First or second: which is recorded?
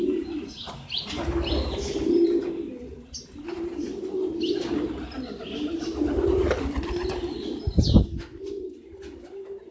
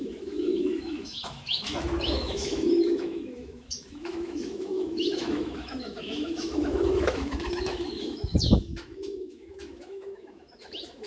first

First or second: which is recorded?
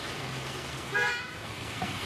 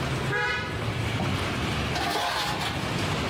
second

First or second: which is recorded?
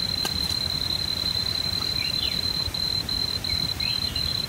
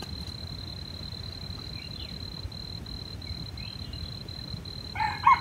second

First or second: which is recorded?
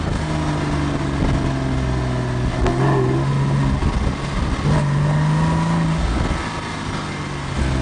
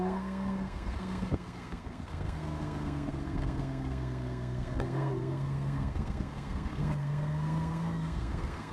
first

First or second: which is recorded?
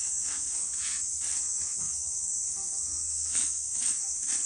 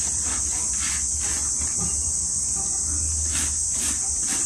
second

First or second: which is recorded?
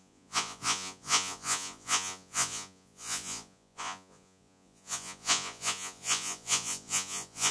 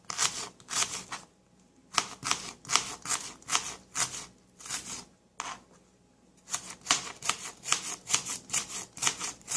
second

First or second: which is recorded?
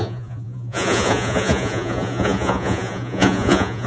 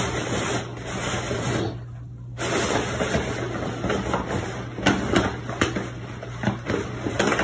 second